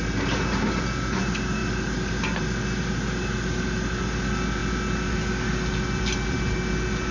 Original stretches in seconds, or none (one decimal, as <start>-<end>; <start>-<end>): 0.0-7.1